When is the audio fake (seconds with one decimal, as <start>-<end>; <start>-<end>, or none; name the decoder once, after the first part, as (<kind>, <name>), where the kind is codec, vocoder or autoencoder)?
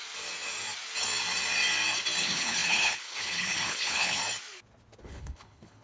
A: 2.2-4.2 (codec, HILCodec); 5.0-5.8